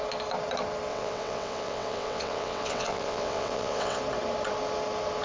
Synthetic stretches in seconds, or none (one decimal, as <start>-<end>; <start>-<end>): 0.9-4.0